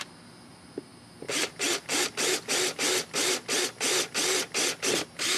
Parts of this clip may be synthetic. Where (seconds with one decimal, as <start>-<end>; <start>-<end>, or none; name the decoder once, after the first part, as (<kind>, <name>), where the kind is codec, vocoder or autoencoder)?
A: none